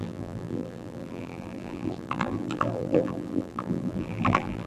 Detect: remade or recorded remade